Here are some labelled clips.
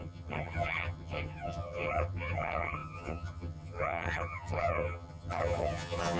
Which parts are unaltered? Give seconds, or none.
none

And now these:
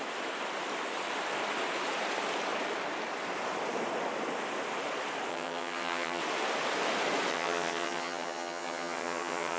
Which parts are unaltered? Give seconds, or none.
0.0-5.3; 6.2-7.3

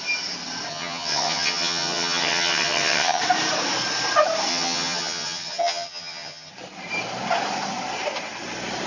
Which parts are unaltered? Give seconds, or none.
0.0-0.7; 3.2-4.5; 6.5-8.9

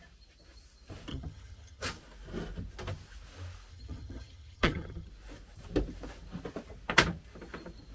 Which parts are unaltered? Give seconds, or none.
0.0-1.1; 1.8-3.7; 5.1-7.9

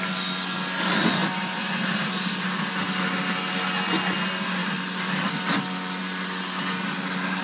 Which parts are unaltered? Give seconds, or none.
0.0-7.4

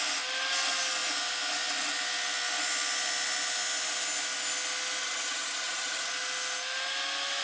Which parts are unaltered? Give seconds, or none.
0.0-5.0; 6.1-7.4

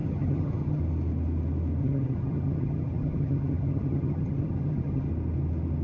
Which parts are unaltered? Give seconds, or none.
0.8-1.8; 5.1-5.8